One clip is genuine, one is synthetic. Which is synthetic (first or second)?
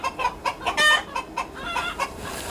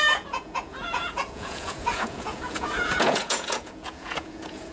second